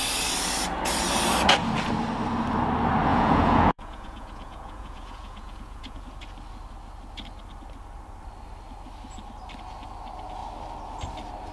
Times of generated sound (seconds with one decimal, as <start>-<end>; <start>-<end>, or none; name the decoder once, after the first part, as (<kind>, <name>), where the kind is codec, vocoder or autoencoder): 3.1-6.0 (vocoder, Vocos)